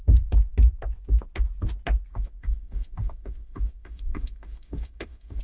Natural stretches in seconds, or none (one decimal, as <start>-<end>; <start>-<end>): 0.0-2.1